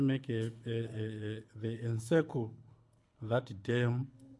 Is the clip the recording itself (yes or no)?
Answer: no